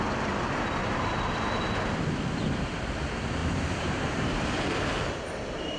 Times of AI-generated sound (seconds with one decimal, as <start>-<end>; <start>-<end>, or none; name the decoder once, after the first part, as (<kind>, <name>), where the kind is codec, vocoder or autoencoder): 0.8-1.9 (vocoder, BigVGAN v2); 3.4-5.8